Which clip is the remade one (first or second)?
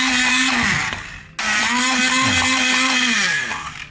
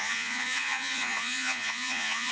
second